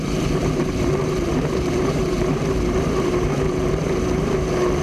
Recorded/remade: remade